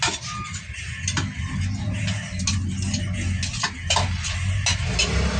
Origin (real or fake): real